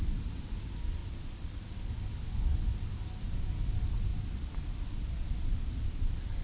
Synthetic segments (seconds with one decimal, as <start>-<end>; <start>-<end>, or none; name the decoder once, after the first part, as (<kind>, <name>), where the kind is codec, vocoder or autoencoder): none